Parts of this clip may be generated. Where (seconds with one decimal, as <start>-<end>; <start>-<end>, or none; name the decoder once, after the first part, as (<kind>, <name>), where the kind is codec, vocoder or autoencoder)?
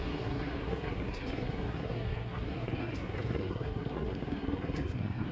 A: 0.0-5.3 (codec, SNAC)